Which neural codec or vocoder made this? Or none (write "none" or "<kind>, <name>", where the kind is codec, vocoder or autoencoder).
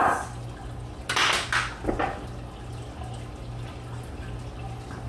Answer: none